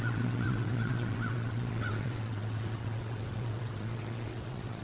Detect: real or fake fake